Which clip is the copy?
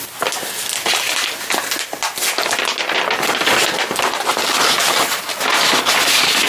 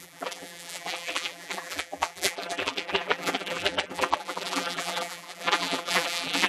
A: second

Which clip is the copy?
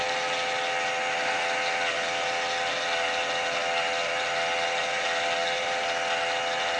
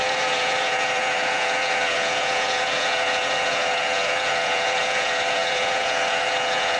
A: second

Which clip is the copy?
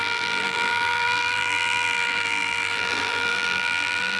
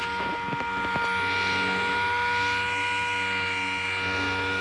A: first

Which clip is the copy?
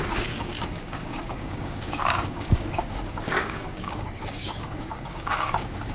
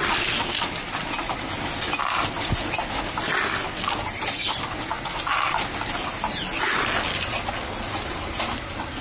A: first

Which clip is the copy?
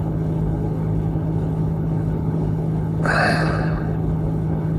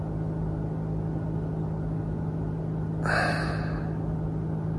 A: first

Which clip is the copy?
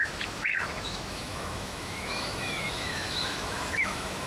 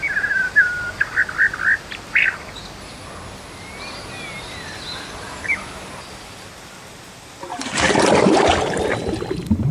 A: first